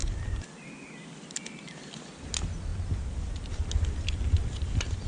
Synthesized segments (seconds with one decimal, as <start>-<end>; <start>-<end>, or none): none